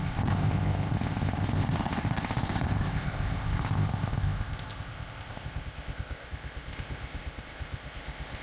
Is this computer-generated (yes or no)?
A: yes